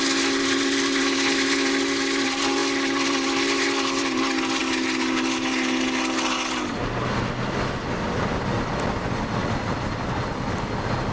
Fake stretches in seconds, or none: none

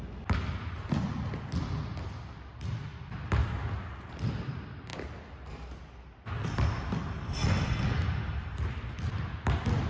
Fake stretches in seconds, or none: none

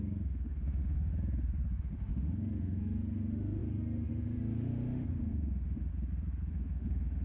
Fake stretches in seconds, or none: 0.0-1.1 (autoencoder, DAC-VAE); 1.8-5.9; 6.5-7.2

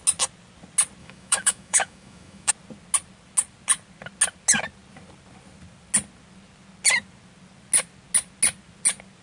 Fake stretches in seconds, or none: 1.0-2.5 (autoencoder, DAC-VAE)

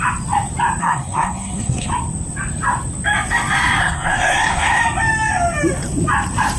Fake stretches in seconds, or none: 0.8-1.9 (codec, SNAC); 3.8-4.8

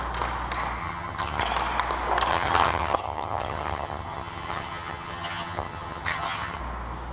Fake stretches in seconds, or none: 0.8-1.4 (vocoder, HiFi-GAN); 2.3-6.6

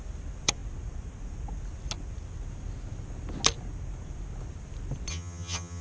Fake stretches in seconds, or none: 5.1-5.8 (vocoder, HiFi-GAN)